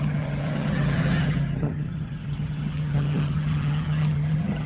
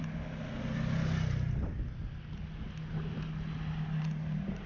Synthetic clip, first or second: first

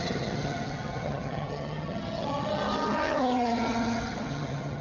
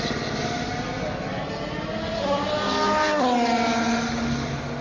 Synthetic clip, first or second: first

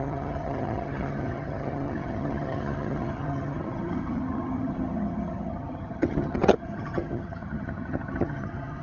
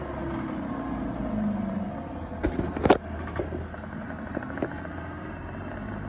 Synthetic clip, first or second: first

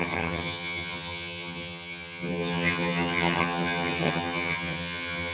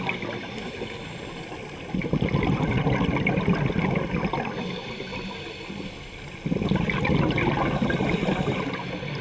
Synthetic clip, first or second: first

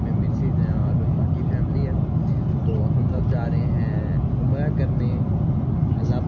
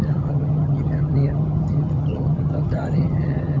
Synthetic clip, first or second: second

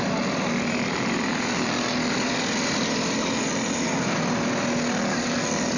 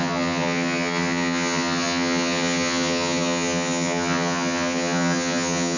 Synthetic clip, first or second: second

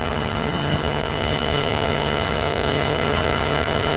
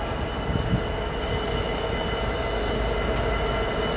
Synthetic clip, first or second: first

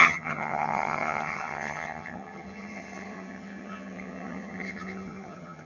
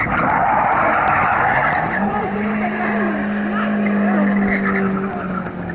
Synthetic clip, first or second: first